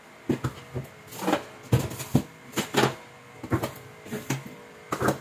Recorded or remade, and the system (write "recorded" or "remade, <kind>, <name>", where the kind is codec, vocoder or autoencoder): recorded